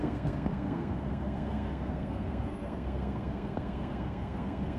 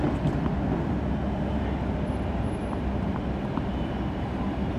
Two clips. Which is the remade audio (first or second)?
first